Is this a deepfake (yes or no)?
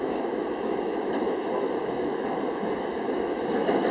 yes